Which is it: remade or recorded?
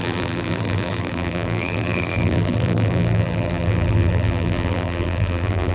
remade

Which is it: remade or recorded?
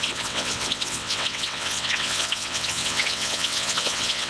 remade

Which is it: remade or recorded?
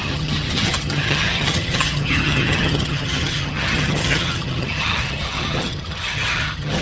remade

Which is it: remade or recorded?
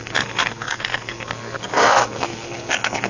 remade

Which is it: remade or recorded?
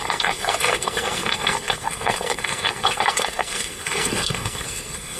remade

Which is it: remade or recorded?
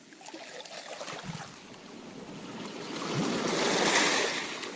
recorded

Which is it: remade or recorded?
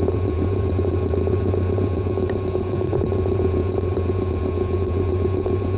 remade